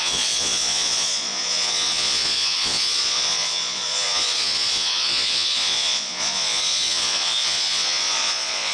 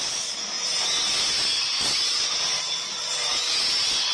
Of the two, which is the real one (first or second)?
second